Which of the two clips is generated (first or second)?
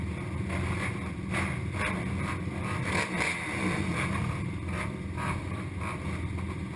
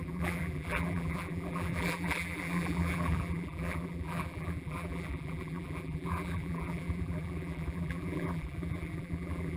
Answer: second